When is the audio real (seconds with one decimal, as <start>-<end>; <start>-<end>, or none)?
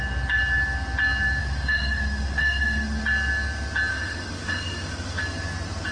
0.0-1.4; 3.0-3.9; 5.2-5.9